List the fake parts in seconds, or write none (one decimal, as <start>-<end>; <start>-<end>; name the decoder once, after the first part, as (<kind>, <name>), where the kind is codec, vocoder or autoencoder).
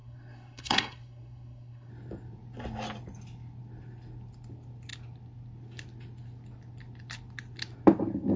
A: 0.0-1.9 (codec, SNAC)